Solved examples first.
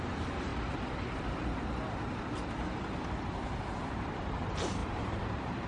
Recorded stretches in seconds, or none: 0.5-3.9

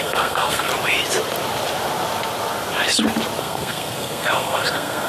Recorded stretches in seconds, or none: 0.7-3.4

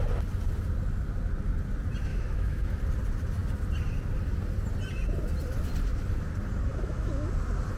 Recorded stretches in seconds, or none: 0.0-2.1; 2.8-6.7; 7.3-7.8